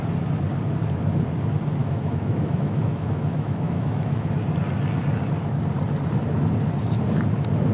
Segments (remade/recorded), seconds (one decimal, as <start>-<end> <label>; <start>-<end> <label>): 0.0-1.8 recorded; 1.8-4.3 remade; 4.3-7.7 recorded